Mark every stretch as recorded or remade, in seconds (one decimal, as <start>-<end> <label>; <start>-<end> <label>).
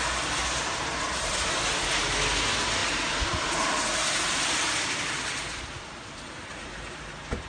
0.0-7.5 recorded